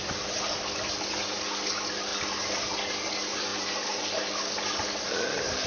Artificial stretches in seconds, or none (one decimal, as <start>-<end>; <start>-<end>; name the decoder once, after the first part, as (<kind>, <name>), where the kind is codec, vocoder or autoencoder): 2.1-2.7 (vocoder, BigVGAN v2); 3.5-5.2